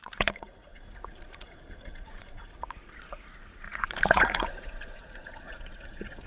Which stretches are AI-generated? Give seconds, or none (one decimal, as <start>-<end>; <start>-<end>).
0.0-6.3